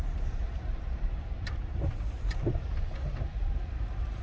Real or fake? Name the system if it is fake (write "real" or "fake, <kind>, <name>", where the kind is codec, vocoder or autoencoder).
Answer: fake, vocoder, BigVGAN v2